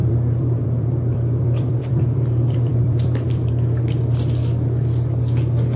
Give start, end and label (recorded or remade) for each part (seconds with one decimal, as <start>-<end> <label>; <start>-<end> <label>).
0.0-3.5 remade; 3.5-5.8 recorded